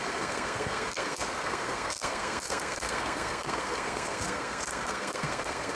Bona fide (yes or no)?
no